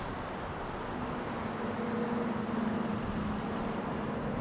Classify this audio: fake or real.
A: real